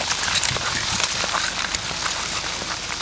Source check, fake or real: real